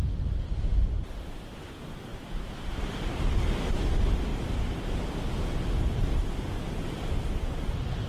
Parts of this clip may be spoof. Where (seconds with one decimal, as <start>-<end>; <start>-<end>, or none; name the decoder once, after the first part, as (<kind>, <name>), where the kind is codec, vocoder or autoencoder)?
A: 4.3-5.2 (vocoder, BigVGAN v2)